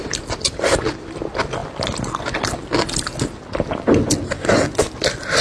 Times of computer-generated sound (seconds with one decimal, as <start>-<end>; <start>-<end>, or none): none